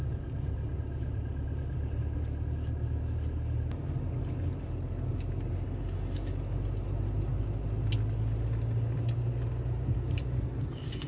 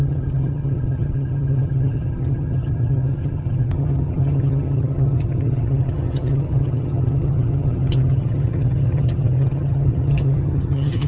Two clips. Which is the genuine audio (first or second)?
first